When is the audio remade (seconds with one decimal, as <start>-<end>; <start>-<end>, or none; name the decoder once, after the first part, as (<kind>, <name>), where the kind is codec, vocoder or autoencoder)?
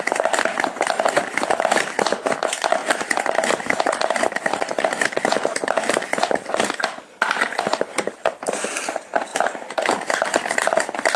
9.3-10.0 (vocoder, BigVGAN v2)